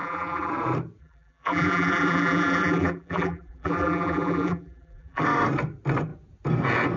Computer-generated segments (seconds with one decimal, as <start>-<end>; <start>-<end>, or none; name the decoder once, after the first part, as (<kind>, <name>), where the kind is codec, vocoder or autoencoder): 0.0-0.5 (vocoder, BigVGAN v2); 1.0-5.2